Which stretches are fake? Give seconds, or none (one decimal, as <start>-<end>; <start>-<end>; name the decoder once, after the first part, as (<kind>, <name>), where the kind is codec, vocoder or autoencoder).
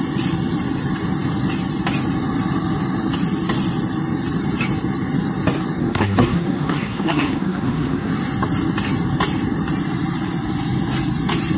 5.8-8.1 (codec, SNAC)